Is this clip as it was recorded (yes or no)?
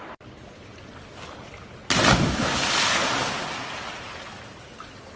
yes